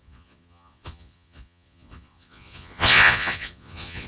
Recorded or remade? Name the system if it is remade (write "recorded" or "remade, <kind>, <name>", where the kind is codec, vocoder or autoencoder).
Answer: remade, vocoder, Vocos